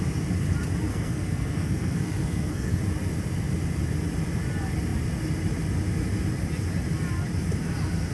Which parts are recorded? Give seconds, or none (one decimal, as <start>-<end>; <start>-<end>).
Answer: 0.0-0.9; 2.8-8.1